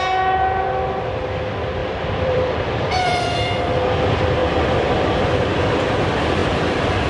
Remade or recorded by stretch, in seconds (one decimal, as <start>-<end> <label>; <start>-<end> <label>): 0.0-1.8 recorded; 1.8-3.6 remade; 3.6-4.4 recorded; 4.4-5.9 remade; 5.9-6.4 recorded; 6.4-7.1 remade